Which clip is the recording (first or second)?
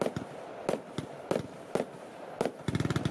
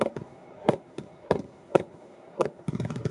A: first